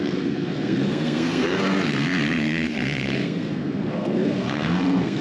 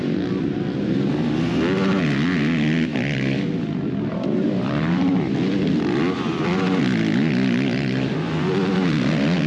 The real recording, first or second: second